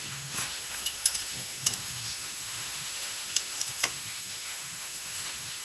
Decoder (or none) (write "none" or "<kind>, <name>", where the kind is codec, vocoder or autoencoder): autoencoder, DAC-VAE